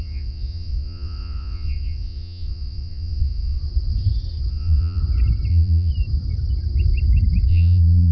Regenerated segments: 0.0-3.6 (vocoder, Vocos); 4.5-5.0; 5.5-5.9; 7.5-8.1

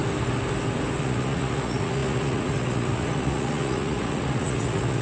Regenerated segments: 1.0-5.0 (vocoder, Vocos)